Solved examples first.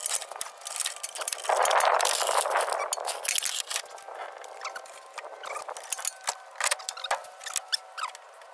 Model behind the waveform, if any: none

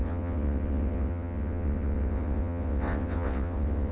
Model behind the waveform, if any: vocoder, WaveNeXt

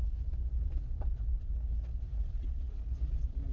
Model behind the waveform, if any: none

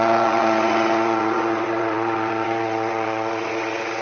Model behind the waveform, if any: vocoder, WaveNeXt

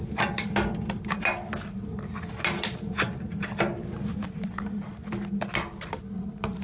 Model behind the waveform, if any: none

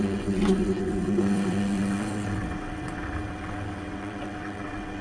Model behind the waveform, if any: vocoder, WaveNeXt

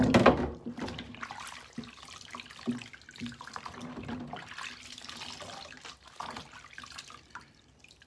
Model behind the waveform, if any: none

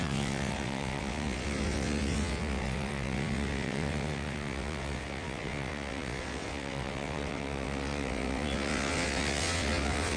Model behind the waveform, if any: vocoder, WaveNeXt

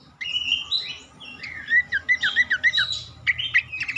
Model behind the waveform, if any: none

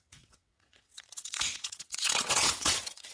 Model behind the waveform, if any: vocoder, WaveNeXt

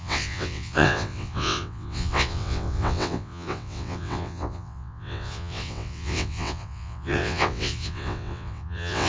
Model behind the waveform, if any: vocoder, WaveNeXt